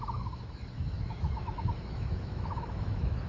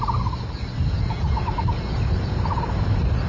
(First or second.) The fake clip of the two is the first